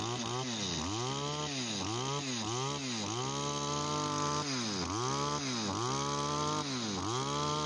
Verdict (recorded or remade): recorded